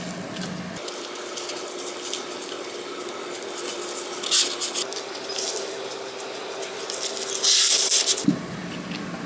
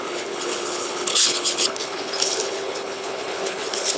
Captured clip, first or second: first